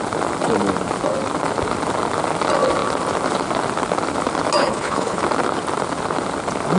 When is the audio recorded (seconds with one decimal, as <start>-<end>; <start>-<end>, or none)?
0.0-4.6; 5.2-6.8